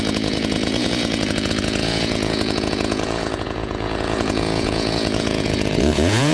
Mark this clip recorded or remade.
remade